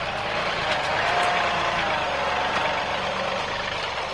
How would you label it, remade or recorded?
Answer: recorded